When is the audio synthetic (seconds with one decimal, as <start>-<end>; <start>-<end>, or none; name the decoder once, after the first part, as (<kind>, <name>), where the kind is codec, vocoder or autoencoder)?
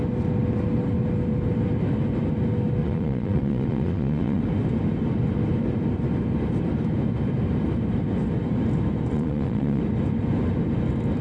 2.8-4.4 (vocoder, Vocos); 9.1-9.8